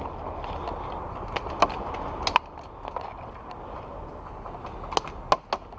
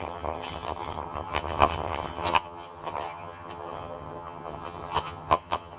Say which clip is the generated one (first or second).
second